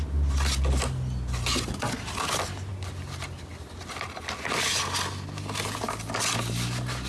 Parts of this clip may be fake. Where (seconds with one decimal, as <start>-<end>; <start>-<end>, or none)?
none